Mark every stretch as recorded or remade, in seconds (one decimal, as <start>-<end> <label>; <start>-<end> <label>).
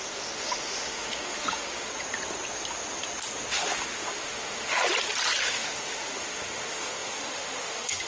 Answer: 0.0-1.9 remade; 1.9-3.5 recorded; 3.5-4.8 remade; 4.8-5.4 recorded; 5.4-8.1 remade